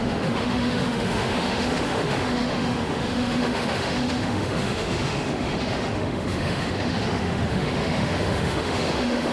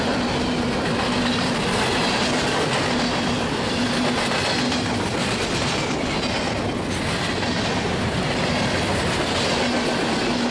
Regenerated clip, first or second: first